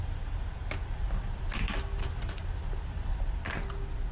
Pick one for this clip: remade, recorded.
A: recorded